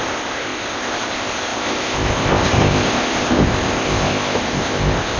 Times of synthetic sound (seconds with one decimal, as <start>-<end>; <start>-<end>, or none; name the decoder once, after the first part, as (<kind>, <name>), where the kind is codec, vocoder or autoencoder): 0.0-5.2 (codec, ZipCodec)